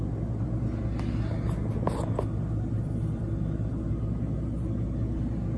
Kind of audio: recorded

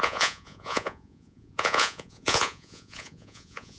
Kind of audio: remade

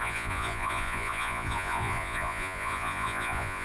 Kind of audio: remade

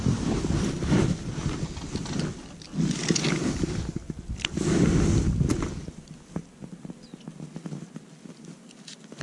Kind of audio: recorded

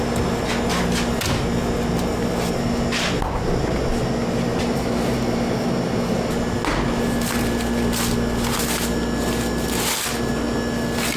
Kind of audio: recorded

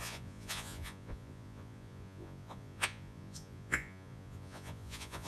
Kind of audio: remade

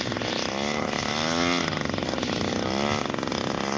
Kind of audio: recorded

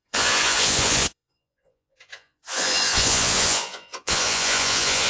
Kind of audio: remade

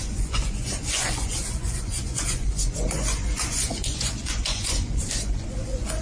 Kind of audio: remade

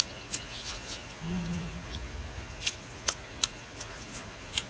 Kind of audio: remade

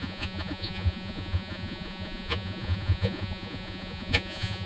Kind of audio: remade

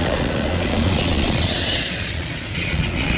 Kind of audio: remade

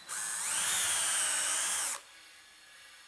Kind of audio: recorded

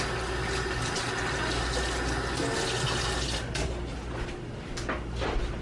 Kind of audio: recorded